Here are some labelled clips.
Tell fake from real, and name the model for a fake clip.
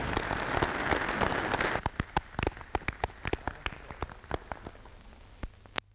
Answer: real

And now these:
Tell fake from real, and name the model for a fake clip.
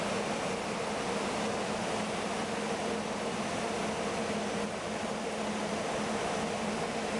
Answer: real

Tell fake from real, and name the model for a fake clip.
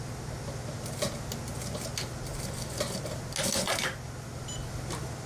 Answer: real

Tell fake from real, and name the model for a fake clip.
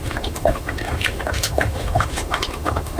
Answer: fake, autoencoder, DAC-VAE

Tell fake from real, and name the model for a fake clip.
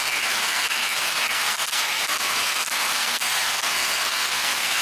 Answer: fake, codec, SNAC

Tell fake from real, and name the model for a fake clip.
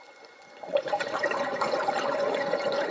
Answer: fake, vocoder, Vocos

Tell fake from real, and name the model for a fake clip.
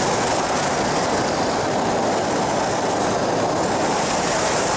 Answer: real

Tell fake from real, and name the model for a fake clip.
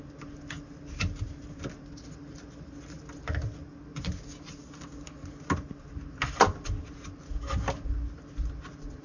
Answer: real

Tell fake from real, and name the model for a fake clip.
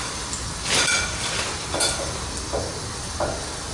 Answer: real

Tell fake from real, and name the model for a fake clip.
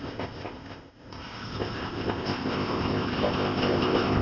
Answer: fake, codec, ZipCodec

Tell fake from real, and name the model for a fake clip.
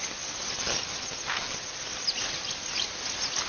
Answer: real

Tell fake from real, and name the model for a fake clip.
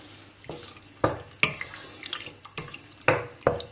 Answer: real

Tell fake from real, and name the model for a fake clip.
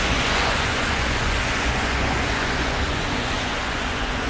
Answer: fake, vocoder, Vocos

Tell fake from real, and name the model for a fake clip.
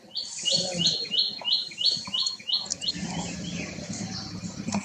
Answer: real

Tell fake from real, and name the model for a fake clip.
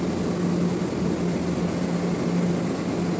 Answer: real